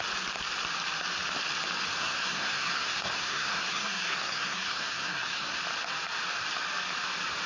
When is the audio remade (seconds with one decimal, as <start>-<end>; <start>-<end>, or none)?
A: 2.0-5.6